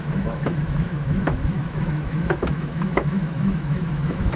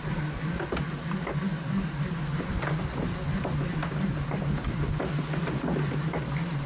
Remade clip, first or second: first